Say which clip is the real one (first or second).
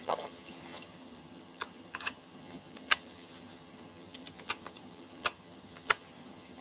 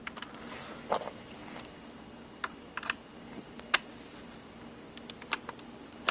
second